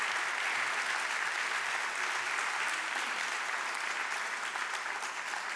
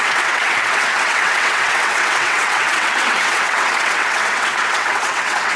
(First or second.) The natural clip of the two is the first